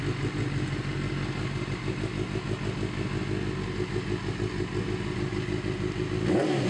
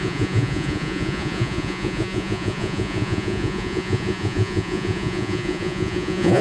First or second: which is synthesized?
second